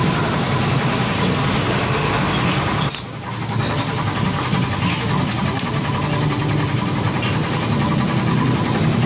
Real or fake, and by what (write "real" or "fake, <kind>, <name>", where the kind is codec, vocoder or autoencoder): real